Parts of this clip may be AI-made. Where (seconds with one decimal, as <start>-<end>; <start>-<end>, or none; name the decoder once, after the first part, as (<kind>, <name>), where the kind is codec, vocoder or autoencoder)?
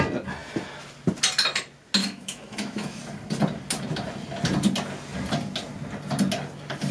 2.0-3.0 (autoencoder, DAC-VAE)